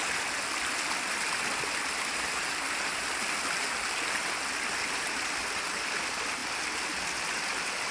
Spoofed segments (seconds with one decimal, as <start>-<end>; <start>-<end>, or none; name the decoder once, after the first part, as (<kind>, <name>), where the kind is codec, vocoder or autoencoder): none